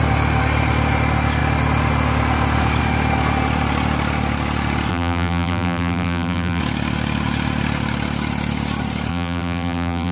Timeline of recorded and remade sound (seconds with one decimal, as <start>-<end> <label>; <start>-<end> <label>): 0.0-4.9 recorded; 4.9-6.6 remade; 6.6-9.1 recorded; 9.1-10.1 remade